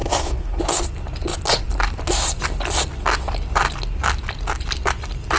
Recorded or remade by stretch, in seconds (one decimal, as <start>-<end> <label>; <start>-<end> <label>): 0.0-0.6 remade; 0.6-5.4 recorded